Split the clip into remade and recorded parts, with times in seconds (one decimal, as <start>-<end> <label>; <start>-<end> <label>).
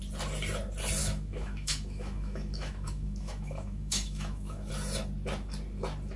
0.0-1.0 recorded; 1.0-4.7 remade; 4.7-6.2 recorded